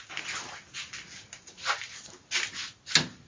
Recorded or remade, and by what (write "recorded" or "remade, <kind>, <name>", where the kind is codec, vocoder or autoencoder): recorded